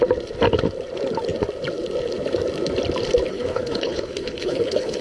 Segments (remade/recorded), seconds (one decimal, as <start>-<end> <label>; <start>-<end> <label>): 0.0-3.3 recorded; 3.3-5.0 remade